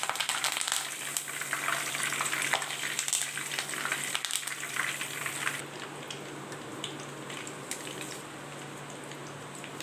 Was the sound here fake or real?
real